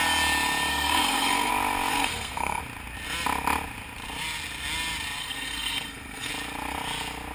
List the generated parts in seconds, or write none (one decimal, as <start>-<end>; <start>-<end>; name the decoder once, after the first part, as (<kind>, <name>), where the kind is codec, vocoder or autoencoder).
0.7-1.5 (codec, SNAC); 1.9-2.6; 5.2-6.3